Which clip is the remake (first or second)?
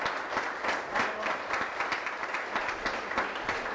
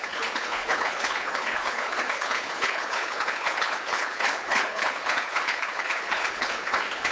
second